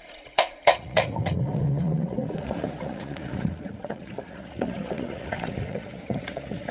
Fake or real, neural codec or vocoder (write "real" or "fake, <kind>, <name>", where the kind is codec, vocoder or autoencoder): fake, vocoder, Vocos